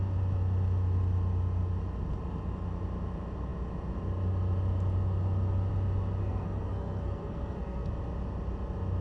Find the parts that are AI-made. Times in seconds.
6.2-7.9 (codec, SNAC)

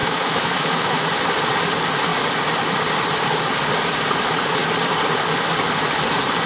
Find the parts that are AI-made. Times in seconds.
0.0-1.2 (autoencoder, DAC-VAE)